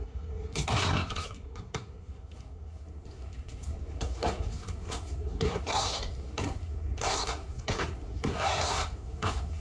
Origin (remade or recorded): remade